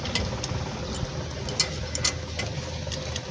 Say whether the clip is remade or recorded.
recorded